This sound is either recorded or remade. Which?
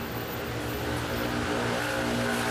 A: recorded